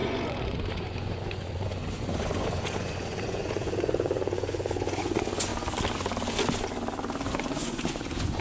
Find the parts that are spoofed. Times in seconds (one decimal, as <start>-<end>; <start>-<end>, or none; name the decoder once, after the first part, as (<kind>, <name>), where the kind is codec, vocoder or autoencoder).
0.0-5.5 (vocoder, Vocos); 7.3-8.4